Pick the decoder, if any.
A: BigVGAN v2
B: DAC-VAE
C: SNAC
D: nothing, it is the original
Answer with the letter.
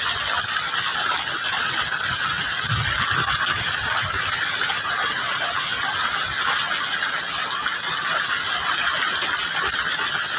D